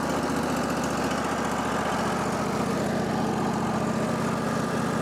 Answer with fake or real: real